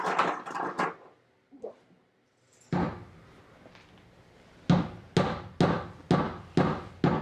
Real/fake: real